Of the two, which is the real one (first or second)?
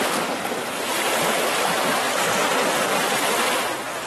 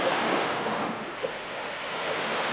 first